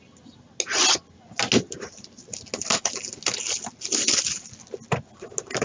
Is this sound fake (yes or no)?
no